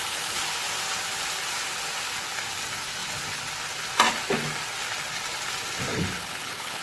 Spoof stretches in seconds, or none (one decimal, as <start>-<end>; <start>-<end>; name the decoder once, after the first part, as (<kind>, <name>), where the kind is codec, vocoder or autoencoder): 5.9-6.8 (codec, HILCodec)